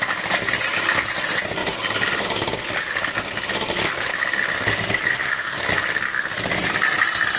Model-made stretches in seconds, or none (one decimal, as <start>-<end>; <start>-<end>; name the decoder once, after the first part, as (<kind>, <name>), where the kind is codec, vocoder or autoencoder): 5.1-5.6 (codec, SNAC)